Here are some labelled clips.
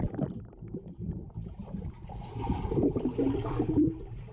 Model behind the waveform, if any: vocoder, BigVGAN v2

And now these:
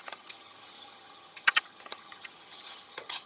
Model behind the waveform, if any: vocoder, HiFi-GAN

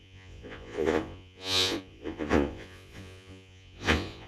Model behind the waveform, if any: vocoder, Vocos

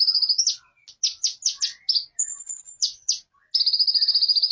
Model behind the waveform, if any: none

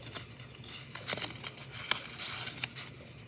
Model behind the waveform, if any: none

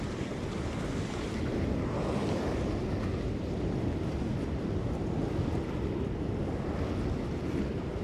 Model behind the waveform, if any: none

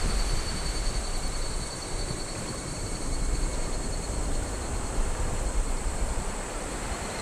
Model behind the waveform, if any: vocoder, BigVGAN v2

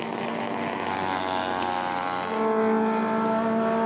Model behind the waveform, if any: none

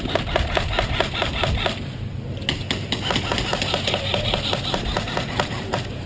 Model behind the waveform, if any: none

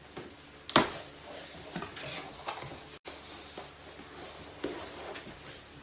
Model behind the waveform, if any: none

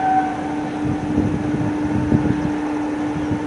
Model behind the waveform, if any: none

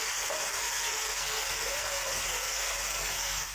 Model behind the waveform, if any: codec, SNAC